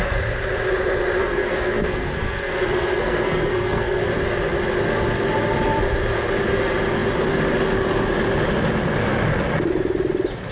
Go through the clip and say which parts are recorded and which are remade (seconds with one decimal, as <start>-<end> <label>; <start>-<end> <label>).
0.0-1.2 recorded; 1.2-4.0 remade; 4.0-10.5 recorded